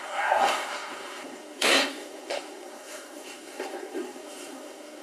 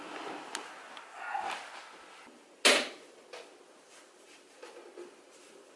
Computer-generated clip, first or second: first